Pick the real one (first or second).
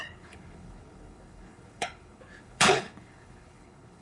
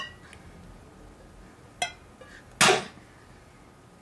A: second